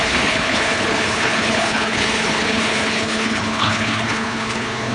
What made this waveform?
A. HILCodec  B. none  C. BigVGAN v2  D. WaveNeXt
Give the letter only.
A